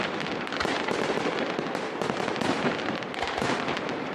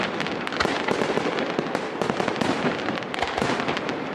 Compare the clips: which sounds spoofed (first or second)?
first